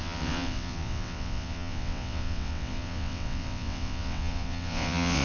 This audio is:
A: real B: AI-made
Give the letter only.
B